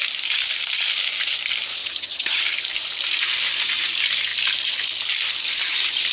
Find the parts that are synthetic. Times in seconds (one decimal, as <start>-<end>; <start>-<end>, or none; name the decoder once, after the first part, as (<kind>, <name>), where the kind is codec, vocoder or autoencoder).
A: 1.8-2.4 (vocoder, HiFi-GAN)